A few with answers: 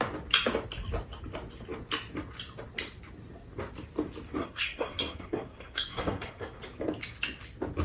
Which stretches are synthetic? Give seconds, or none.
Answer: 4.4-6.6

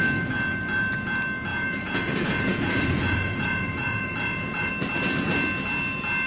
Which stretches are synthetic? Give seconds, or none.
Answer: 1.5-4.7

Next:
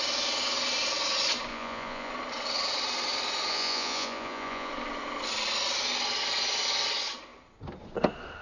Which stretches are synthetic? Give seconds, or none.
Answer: 1.5-2.1; 3.5-4.7

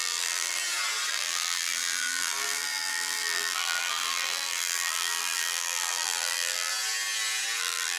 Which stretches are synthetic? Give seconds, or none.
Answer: 0.0-0.6; 1.1-6.7; 7.6-8.0